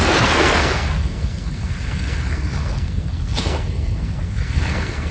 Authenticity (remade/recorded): remade